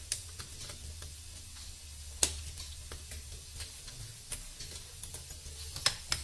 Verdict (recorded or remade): recorded